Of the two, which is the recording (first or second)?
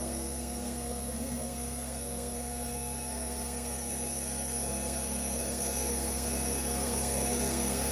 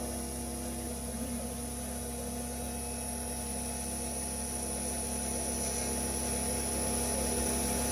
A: second